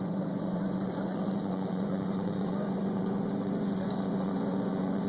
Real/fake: fake